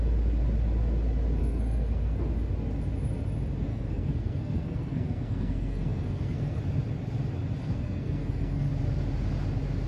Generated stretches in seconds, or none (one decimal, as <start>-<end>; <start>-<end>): 1.4-2.2; 3.7-6.6; 7.6-8.7